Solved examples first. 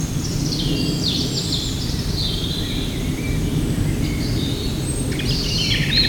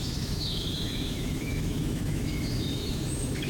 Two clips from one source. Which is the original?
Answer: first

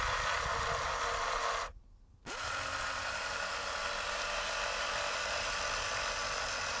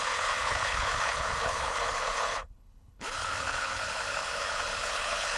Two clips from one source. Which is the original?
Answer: first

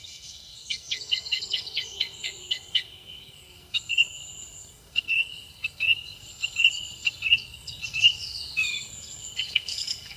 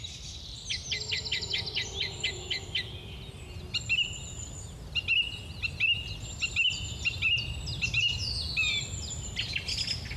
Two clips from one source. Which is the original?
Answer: second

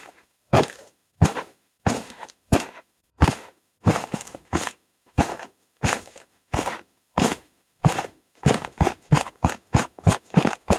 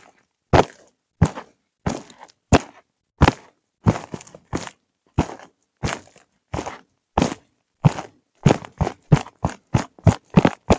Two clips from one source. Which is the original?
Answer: second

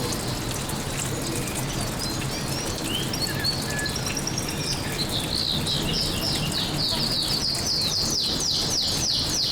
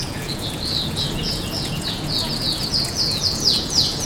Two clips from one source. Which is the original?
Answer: first